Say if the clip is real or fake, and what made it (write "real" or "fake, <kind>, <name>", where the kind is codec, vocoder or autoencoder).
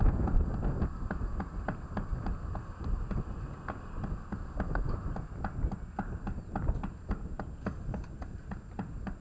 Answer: real